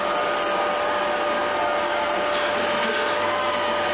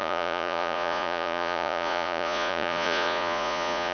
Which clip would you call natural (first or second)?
first